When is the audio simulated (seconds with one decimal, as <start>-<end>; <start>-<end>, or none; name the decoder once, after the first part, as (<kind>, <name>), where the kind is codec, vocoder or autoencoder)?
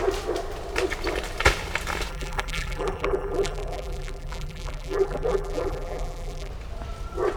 2.1-6.5 (vocoder, BigVGAN v2)